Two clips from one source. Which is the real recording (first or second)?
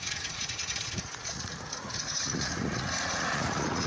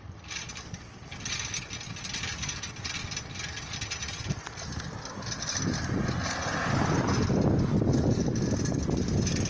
second